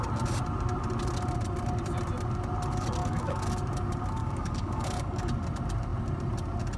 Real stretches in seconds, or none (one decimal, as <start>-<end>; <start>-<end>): 0.0-3.0; 3.6-4.2; 5.3-6.8